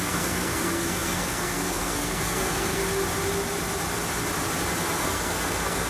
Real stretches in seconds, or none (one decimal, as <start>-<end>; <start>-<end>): 2.8-5.0